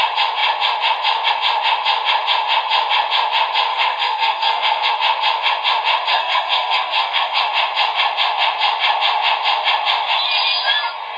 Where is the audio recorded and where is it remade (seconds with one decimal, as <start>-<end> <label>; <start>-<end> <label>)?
0.0-3.7 recorded; 3.7-4.9 remade; 4.9-6.1 recorded; 6.1-7.4 remade; 7.4-11.2 recorded